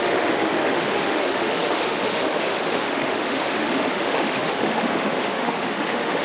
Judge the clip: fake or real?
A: fake